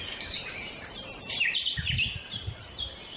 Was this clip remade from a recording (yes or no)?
yes